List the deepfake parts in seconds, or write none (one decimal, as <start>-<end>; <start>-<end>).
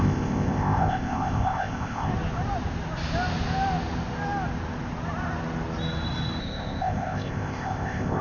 0.0-2.1; 6.4-8.2